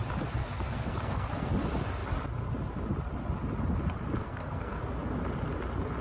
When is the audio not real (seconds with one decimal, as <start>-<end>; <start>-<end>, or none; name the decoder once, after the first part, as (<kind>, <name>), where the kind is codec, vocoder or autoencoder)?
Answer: 0.4-1.5 (codec, SNAC); 4.2-4.8